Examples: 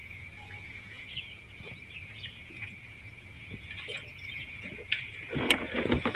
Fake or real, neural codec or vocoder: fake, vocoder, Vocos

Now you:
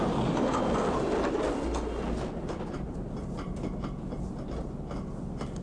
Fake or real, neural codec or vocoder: real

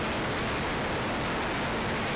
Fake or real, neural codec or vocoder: real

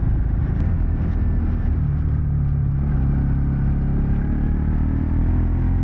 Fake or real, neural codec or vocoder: real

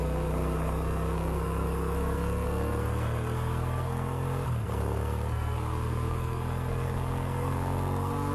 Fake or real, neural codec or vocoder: fake, codec, SNAC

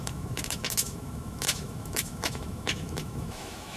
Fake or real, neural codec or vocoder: fake, autoencoder, DAC-VAE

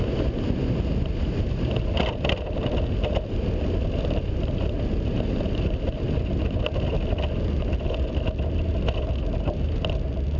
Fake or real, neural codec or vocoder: real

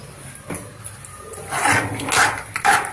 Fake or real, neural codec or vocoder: real